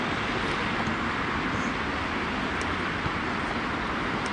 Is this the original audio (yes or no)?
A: yes